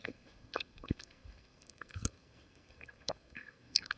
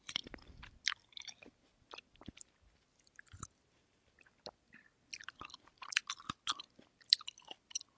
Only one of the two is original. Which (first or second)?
second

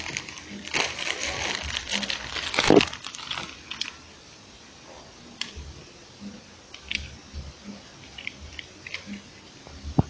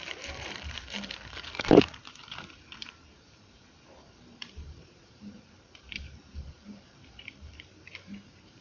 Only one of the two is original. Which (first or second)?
first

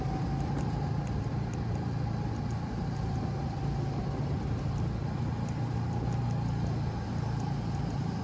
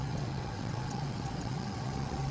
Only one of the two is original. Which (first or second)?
first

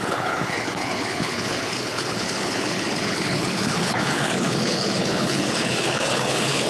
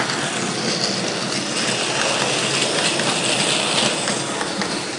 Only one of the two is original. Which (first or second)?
second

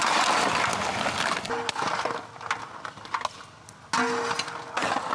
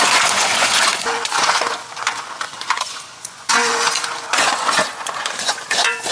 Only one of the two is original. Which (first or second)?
first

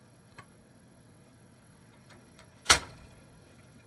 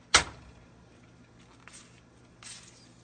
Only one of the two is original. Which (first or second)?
second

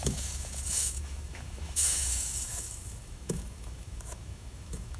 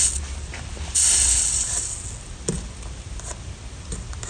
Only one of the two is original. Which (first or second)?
second